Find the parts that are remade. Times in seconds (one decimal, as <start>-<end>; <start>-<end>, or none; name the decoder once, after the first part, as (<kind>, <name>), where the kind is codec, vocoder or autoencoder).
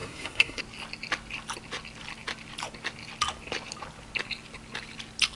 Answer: 0.0-0.6 (codec, SNAC)